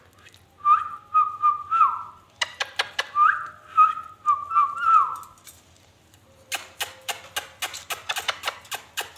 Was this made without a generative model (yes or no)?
yes